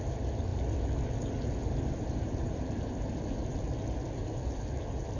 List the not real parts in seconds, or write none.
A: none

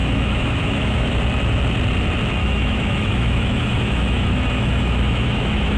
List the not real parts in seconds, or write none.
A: 0.0-1.1 (autoencoder, DAC-VAE); 2.4-5.8